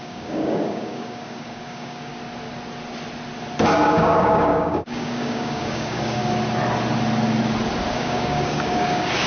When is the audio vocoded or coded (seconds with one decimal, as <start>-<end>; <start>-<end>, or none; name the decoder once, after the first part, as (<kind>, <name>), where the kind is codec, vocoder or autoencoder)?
0.0-2.1 (codec, DAC); 3.8-6.2; 7.9-9.3